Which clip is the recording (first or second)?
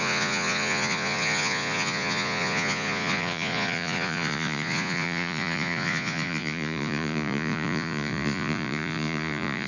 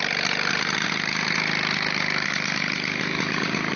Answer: second